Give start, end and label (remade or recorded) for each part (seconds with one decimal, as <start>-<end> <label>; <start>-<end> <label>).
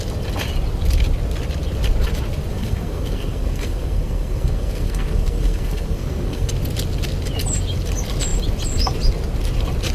0.0-2.5 recorded; 2.5-6.5 remade; 6.5-9.9 recorded